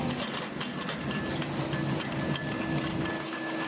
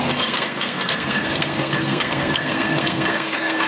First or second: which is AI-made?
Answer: second